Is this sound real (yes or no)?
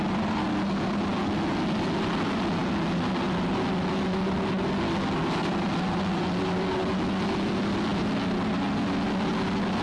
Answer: yes